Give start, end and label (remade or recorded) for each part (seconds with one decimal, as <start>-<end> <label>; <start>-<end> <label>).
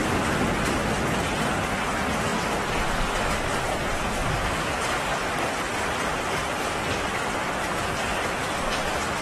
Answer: 0.0-2.3 recorded; 2.3-2.9 remade; 2.9-4.2 recorded; 4.2-8.6 remade; 8.6-9.2 recorded